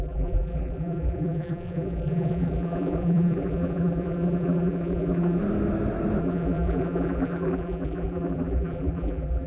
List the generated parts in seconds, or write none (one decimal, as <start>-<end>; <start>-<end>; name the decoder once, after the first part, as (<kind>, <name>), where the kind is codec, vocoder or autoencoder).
0.0-5.4 (vocoder, BigVGAN v2); 6.2-9.5